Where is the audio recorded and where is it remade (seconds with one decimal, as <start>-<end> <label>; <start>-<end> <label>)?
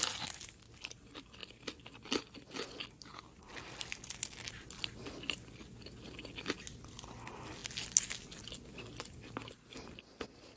0.0-10.6 recorded